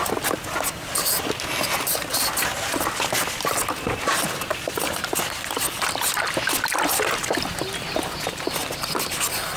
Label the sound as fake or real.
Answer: real